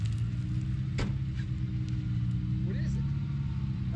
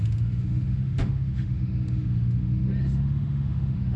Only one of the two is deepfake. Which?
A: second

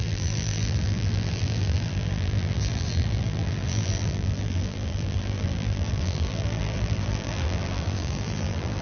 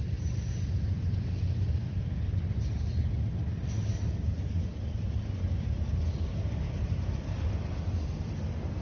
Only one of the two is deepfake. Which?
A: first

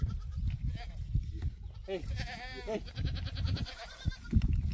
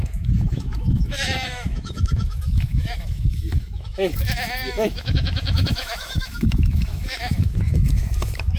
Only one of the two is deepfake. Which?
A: second